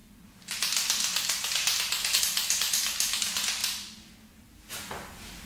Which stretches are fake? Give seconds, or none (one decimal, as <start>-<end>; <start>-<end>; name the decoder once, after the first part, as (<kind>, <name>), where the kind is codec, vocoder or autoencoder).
none